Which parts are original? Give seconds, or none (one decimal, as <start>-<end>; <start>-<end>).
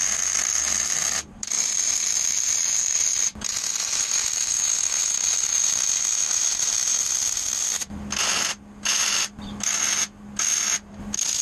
4.5-11.4